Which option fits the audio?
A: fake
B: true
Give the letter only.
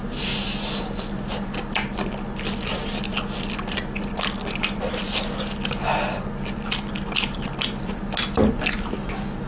B